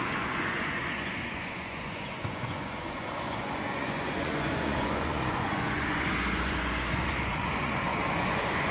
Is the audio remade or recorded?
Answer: remade